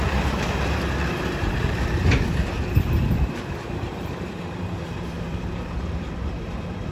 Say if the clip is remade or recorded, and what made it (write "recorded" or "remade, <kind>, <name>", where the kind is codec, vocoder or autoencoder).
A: remade, vocoder, BigVGAN v2